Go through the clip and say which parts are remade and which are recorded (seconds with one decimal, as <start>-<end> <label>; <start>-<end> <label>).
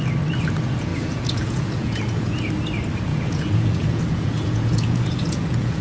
0.0-0.9 recorded; 0.9-2.5 remade; 2.5-3.1 recorded; 3.1-5.8 remade